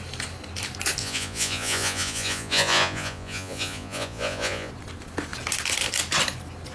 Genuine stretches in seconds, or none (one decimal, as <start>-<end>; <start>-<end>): 0.0-1.0; 4.7-6.7